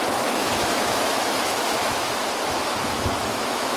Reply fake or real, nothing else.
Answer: fake